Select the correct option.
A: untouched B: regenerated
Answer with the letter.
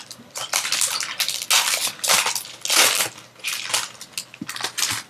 A